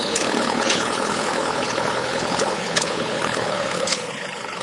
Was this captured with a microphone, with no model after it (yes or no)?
no